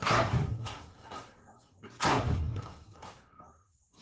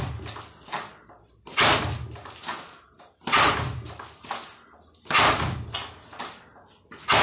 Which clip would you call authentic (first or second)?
second